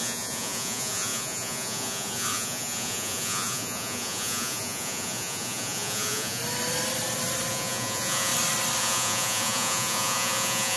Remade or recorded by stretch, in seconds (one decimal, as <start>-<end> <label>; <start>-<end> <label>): 0.0-6.4 remade; 6.4-7.5 recorded; 7.5-8.3 remade; 8.3-8.8 recorded; 8.8-10.8 remade